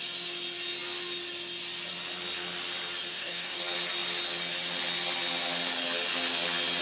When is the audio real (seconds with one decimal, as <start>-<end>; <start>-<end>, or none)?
0.0-3.1; 3.6-6.8